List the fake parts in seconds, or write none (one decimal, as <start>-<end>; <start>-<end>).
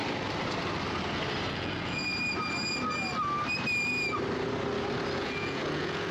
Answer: 1.5-2.1; 5.2-6.1